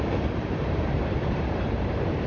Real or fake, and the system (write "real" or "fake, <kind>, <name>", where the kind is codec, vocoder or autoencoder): fake, vocoder, BigVGAN v2